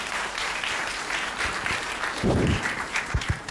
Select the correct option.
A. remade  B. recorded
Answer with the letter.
A